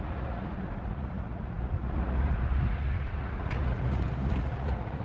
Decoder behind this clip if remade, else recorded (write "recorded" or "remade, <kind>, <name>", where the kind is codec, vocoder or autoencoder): remade, vocoder, Vocos